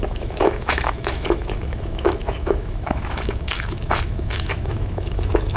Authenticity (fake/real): fake